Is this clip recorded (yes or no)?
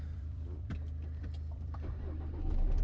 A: no